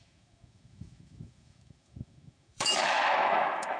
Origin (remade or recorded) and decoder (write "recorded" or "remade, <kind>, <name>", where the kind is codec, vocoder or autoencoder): remade, autoencoder, DAC-VAE